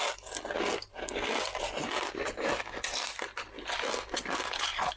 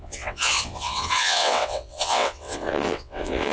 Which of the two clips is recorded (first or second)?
first